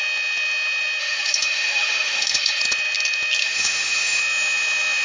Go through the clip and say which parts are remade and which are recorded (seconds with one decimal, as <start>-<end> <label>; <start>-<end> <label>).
0.0-1.0 recorded; 1.0-2.6 remade; 2.6-3.4 recorded; 3.4-4.2 remade; 4.2-5.0 recorded

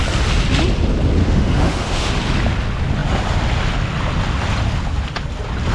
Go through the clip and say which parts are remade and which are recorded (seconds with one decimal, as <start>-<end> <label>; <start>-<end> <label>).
0.0-1.2 recorded; 1.2-2.1 remade; 2.1-5.7 recorded

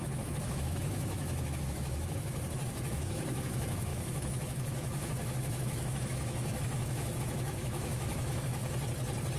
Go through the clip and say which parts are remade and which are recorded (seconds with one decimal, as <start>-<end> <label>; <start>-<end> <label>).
0.0-8.6 remade; 8.6-9.4 recorded

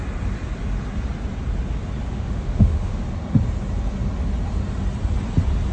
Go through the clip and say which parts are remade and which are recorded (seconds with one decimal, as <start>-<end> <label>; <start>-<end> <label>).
0.0-2.1 recorded; 2.1-3.0 remade; 3.0-5.7 recorded

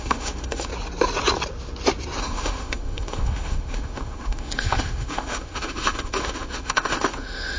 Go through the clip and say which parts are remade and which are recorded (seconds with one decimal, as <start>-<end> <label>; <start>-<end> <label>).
0.0-0.7 remade; 0.7-2.2 recorded; 2.2-7.6 remade

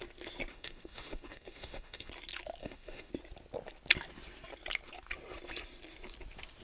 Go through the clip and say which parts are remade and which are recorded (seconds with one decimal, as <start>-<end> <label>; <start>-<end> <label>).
0.0-0.5 recorded; 0.5-2.1 remade; 2.1-2.6 recorded; 2.6-3.1 remade; 3.1-6.6 recorded